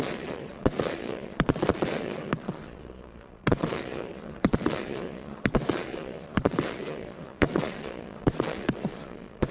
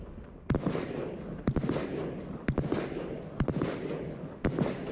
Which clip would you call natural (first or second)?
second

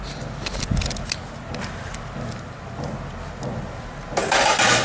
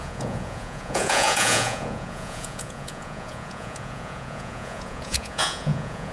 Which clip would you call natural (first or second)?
first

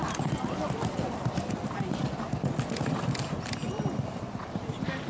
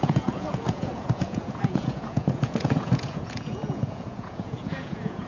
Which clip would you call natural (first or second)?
first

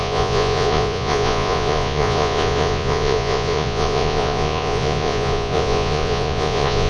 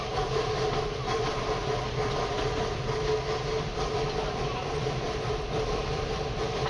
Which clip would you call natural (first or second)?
second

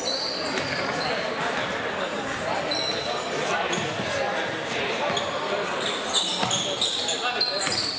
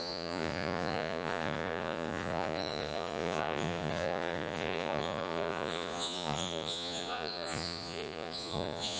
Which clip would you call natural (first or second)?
first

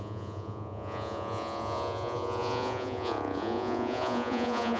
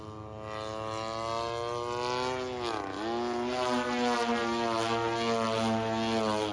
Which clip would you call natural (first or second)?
second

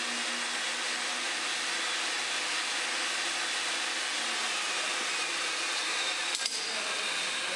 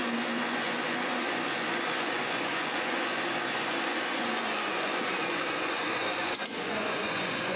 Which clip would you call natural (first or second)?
first